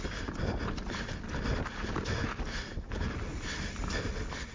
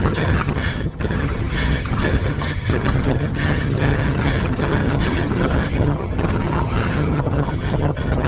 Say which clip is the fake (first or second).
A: second